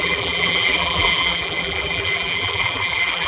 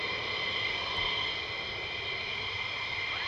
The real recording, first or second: second